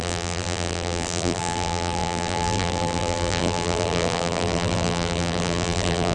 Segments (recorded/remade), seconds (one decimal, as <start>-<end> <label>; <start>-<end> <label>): 0.0-6.1 remade